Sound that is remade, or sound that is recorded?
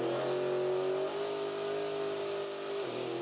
recorded